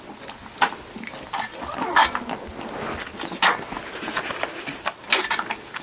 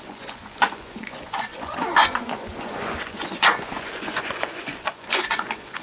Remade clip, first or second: second